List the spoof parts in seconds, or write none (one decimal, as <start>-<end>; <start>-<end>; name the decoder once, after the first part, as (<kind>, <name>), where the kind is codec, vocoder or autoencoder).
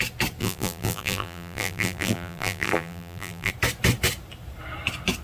0.4-3.5 (vocoder, BigVGAN v2)